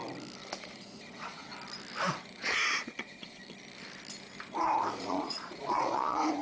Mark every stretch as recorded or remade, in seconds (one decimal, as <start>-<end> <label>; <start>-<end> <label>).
0.0-0.6 recorded; 0.6-1.5 remade; 1.5-2.1 recorded; 2.1-3.4 remade; 3.4-5.0 recorded; 5.0-6.4 remade